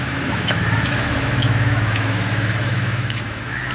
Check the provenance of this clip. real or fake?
fake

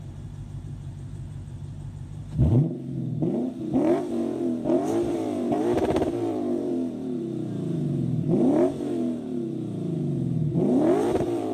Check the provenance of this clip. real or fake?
fake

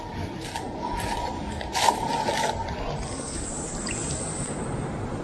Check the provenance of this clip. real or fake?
real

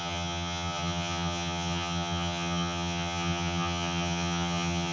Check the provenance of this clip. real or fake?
fake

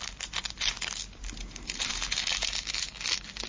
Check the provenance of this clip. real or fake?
fake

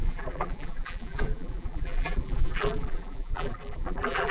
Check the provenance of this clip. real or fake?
fake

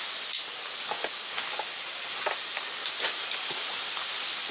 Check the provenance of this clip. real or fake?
real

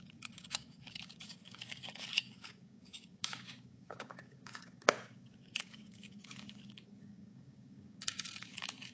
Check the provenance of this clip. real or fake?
fake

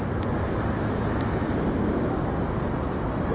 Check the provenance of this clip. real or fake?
fake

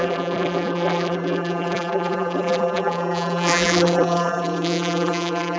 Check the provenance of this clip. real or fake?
fake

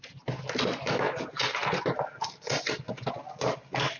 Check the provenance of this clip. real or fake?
real